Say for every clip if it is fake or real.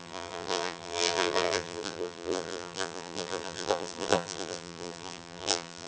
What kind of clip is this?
fake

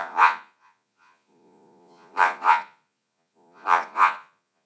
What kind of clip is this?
fake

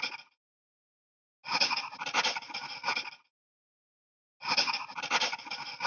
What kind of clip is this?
real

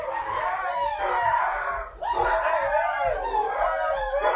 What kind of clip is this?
real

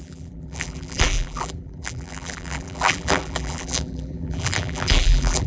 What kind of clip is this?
fake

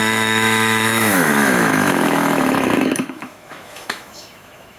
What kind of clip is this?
fake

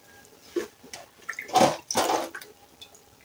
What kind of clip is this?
real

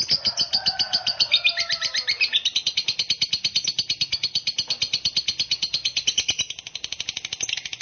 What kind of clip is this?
real